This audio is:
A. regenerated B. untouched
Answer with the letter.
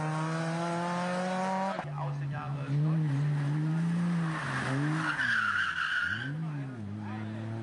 B